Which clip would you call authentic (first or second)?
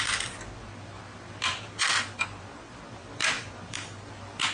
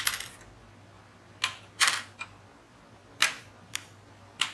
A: second